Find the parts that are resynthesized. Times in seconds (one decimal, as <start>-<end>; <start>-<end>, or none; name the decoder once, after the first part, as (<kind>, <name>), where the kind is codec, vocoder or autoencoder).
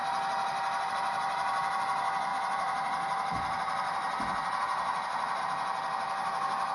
2.3-5.4 (vocoder, BigVGAN v2)